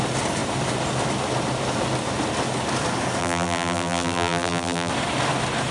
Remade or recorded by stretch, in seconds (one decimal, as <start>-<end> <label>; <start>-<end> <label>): 0.0-3.2 recorded; 3.2-4.9 remade; 4.9-5.7 recorded